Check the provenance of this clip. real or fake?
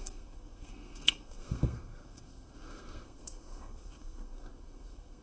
fake